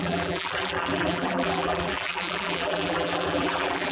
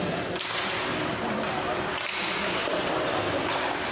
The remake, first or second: first